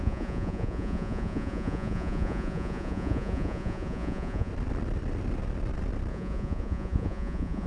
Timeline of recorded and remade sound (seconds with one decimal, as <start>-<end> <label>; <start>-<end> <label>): 0.0-4.5 remade; 4.5-6.1 recorded; 6.1-7.7 remade